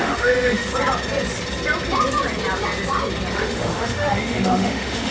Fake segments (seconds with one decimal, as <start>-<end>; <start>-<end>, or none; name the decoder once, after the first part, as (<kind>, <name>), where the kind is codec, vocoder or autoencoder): 0.0-0.7 (autoencoder, DAC-VAE); 3.3-5.1